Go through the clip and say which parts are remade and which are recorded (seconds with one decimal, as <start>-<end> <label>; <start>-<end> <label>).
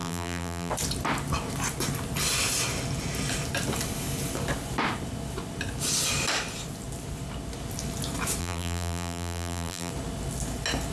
0.0-0.7 remade; 0.7-8.4 recorded; 8.4-9.9 remade; 9.9-10.9 recorded